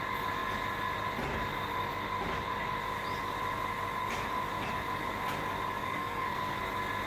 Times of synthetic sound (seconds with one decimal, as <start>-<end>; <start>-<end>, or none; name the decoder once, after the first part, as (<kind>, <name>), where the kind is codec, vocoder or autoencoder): 5.8-6.6 (codec, SNAC)